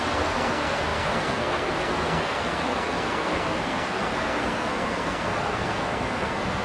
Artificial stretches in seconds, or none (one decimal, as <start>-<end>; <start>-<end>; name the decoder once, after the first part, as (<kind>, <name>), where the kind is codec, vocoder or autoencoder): 0.0-6.6 (codec, SNAC)